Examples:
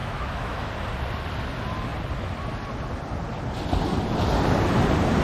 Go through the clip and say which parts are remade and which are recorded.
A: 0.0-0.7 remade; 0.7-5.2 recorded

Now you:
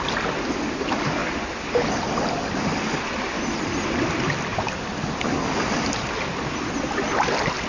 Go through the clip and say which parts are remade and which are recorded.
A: 0.0-7.7 recorded

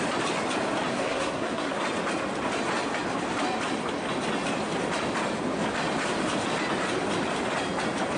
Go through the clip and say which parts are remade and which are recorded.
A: 0.0-0.9 recorded; 0.9-1.8 remade; 1.8-8.2 recorded

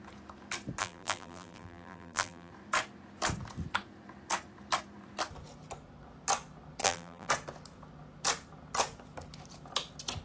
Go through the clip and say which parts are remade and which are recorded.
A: 0.0-0.8 recorded; 0.8-2.5 remade; 2.5-6.8 recorded; 6.8-7.3 remade; 7.3-10.2 recorded

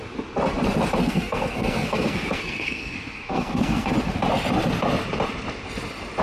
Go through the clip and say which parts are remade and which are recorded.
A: 0.0-1.0 recorded; 1.0-3.9 remade; 3.9-6.2 recorded

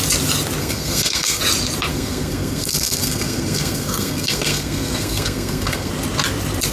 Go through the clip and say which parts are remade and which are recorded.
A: 0.0-0.6 recorded; 0.6-1.4 remade; 1.4-1.9 recorded; 1.9-5.9 remade; 5.9-6.7 recorded